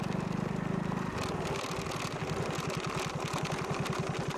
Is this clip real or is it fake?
real